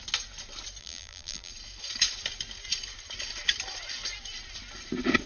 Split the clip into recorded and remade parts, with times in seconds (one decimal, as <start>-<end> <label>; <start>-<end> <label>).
0.0-0.8 recorded; 0.8-1.5 remade; 1.5-5.3 recorded